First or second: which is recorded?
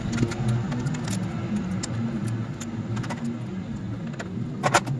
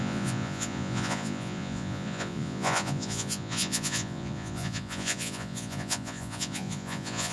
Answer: first